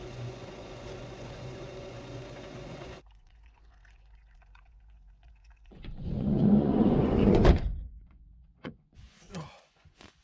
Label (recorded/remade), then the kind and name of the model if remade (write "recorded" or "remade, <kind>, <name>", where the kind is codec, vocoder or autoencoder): remade, vocoder, Vocos